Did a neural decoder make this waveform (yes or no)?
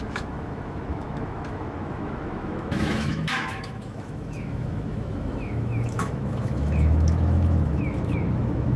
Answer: yes